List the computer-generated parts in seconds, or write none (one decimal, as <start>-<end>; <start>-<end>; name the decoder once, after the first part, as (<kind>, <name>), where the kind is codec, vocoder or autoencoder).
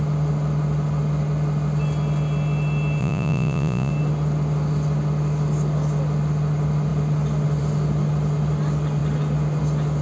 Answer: 3.0-3.9 (vocoder, Vocos)